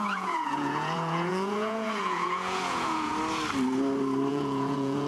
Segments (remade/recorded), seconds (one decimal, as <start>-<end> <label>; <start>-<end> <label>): 0.0-3.1 remade; 3.1-4.3 recorded; 4.3-5.1 remade